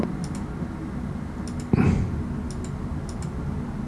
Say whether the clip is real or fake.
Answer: real